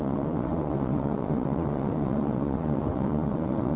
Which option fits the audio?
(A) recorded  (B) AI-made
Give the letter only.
B